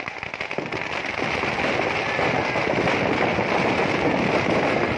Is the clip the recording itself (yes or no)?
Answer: yes